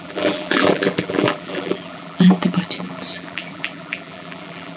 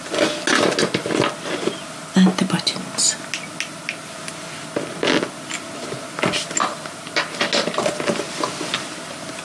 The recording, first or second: second